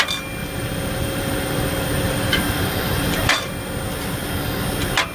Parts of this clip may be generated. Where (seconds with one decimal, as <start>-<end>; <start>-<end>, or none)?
0.4-3.5